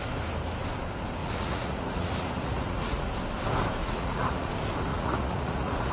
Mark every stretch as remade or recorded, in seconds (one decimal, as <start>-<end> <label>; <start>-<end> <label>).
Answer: 0.0-1.2 recorded; 1.2-3.1 remade; 3.1-3.8 recorded; 3.8-4.5 remade; 4.5-4.9 recorded; 4.9-5.9 remade

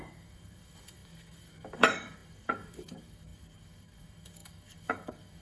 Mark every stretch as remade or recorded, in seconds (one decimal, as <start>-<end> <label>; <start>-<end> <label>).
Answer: 0.0-5.4 remade